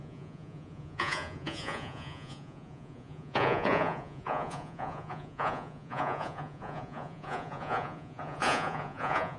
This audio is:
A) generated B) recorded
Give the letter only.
A